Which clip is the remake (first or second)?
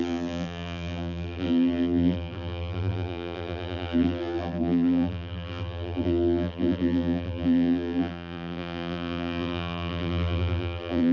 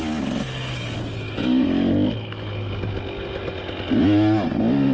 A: first